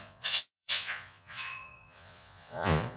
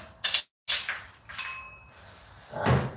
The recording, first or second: second